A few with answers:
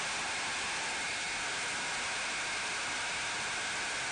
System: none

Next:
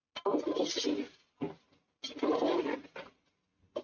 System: none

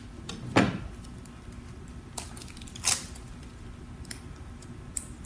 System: none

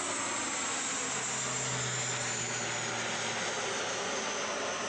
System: none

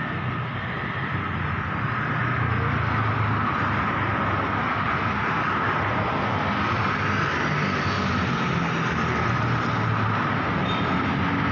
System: none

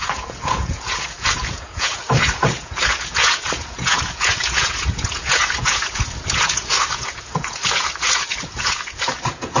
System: vocoder, Vocos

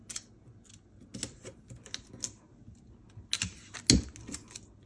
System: none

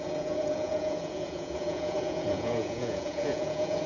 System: vocoder, Vocos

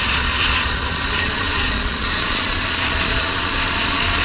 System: vocoder, Vocos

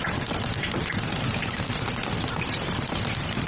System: none